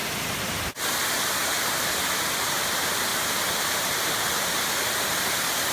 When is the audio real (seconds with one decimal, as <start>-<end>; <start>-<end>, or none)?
0.0-3.1; 4.1-5.7